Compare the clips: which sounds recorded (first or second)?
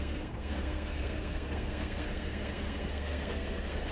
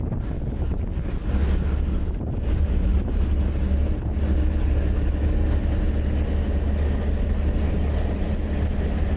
second